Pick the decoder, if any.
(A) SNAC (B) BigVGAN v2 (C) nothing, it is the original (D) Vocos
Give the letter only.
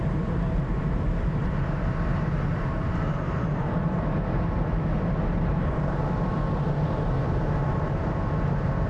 B